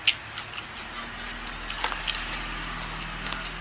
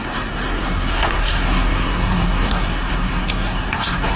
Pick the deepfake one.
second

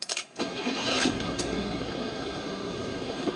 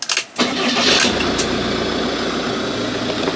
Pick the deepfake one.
first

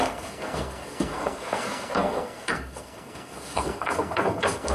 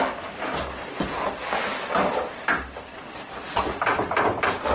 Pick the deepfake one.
first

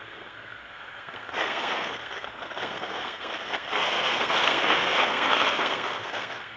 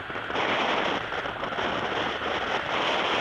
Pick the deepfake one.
first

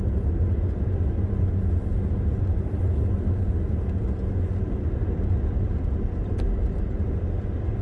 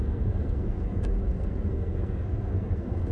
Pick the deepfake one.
second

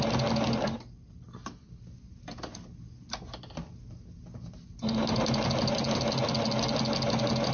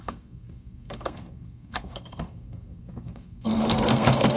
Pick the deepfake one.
second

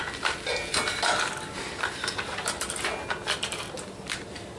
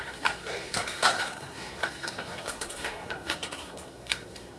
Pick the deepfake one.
second